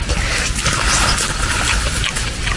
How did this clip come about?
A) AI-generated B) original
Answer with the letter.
B